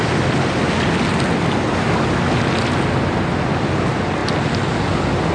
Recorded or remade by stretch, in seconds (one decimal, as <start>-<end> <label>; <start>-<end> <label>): 0.0-5.3 recorded